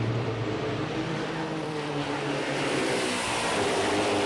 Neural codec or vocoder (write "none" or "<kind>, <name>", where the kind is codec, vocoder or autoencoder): vocoder, BigVGAN v2